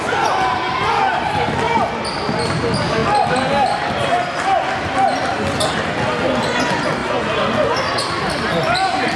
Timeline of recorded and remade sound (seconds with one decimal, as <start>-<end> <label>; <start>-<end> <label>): 0.0-9.2 recorded